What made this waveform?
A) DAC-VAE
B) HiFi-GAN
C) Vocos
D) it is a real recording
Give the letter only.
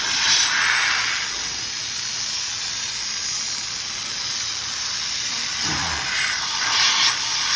D